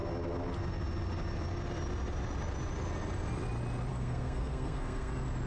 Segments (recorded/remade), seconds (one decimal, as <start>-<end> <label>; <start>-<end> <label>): 0.0-3.9 recorded; 3.9-5.1 remade; 5.1-5.5 recorded